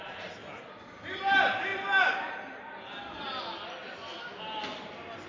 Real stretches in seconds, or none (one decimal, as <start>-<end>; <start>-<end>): 0.0-5.3